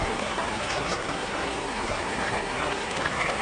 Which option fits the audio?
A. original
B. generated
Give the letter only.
B